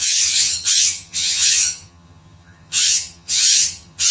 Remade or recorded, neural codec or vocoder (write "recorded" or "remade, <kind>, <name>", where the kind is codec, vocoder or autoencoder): remade, vocoder, HiFi-GAN